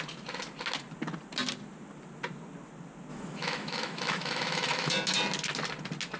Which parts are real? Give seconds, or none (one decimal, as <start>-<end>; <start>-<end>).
0.0-3.1; 4.9-6.2